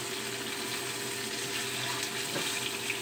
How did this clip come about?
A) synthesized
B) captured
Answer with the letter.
B